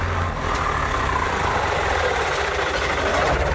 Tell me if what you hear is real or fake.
real